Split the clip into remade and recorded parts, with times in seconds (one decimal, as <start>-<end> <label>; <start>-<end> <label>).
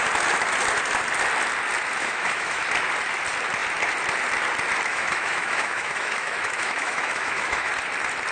0.0-2.0 recorded; 2.0-2.6 remade; 2.6-4.9 recorded; 4.9-7.7 remade; 7.7-8.3 recorded